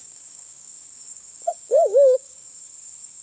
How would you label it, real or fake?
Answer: fake